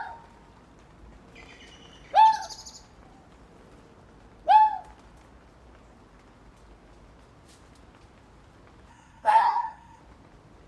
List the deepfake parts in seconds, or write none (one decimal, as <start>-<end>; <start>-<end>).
8.9-10.0